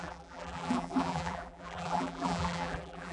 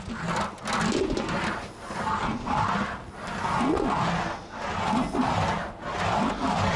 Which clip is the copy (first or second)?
first